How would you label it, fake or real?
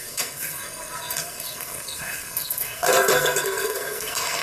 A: fake